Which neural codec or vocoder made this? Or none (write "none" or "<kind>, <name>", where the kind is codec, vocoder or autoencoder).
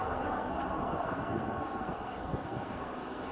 codec, SNAC